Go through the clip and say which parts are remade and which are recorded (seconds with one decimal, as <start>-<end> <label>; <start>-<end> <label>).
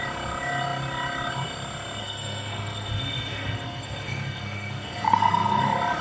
0.0-2.0 recorded; 2.0-5.6 remade; 5.6-6.0 recorded